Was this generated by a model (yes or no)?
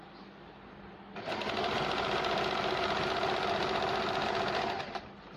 no